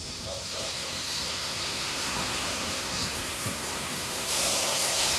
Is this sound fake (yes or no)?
yes